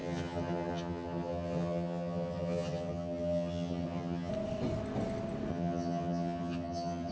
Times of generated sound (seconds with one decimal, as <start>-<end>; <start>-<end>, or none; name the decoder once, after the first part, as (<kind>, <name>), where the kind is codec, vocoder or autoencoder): 0.0-4.3 (vocoder, HiFi-GAN); 5.5-7.1